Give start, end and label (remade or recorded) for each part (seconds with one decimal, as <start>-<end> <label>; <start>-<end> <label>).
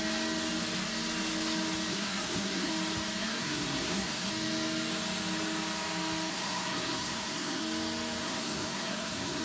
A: 0.0-1.9 recorded; 1.9-2.7 remade; 2.7-3.2 recorded; 3.2-4.3 remade; 4.3-6.3 recorded; 6.3-7.6 remade; 7.6-8.2 recorded; 8.2-9.4 remade